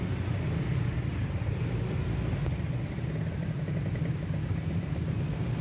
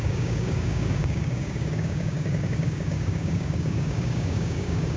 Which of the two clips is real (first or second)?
first